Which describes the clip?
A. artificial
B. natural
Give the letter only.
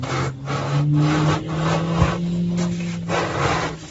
B